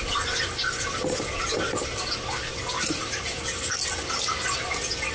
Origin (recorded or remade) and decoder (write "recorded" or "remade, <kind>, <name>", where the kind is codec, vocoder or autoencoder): recorded